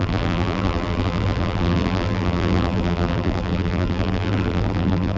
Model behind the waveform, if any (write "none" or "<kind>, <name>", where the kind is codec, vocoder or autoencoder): vocoder, BigVGAN v2